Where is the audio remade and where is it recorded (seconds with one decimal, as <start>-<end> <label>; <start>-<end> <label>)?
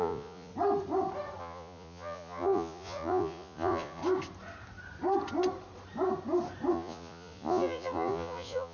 0.0-0.5 remade; 0.5-1.4 recorded; 1.4-4.0 remade; 4.0-6.7 recorded; 6.7-8.7 remade